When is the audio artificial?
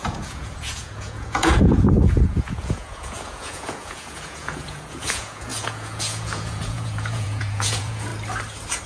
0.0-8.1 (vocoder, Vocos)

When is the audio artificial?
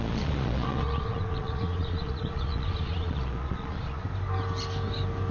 0.0-4.0 (vocoder, Vocos)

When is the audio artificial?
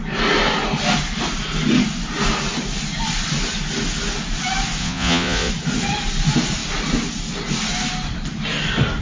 4.8-5.5 (vocoder, Vocos)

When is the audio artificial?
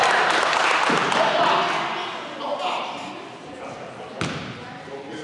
none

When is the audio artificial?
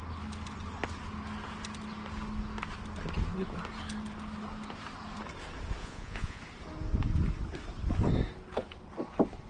5.8-6.4 (vocoder, Vocos)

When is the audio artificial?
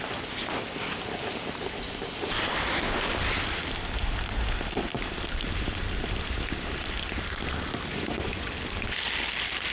7.9-8.5 (vocoder, Vocos)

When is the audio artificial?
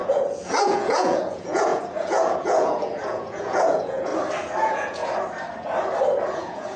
0.0-4.1 (vocoder, Vocos); 4.6-5.0; 6.3-6.8